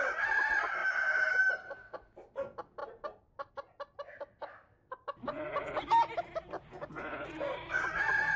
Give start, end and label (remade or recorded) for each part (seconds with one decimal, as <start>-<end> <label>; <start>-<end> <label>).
0.0-8.4 recorded

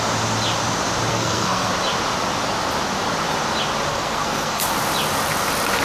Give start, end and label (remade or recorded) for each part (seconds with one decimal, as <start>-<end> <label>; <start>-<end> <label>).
0.0-1.1 recorded; 1.1-1.7 remade; 1.7-3.9 recorded; 3.9-4.6 remade; 4.6-5.8 recorded